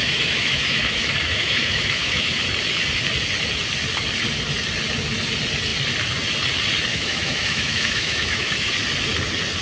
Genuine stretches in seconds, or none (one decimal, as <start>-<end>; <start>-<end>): 2.4-6.9; 8.7-9.6

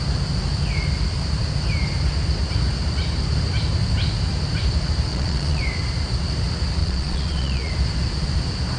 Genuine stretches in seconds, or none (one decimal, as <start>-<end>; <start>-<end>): 0.0-5.1; 5.6-6.8; 7.7-8.8